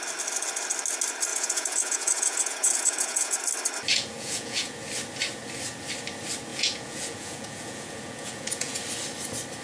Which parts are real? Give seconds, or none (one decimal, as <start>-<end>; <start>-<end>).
0.0-1.3; 3.4-3.9; 4.8-6.5; 8.8-9.6